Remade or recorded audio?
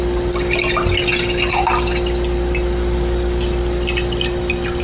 recorded